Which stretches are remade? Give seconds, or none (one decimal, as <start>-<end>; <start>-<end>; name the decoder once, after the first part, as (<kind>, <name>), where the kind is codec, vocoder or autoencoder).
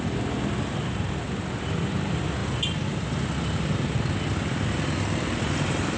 none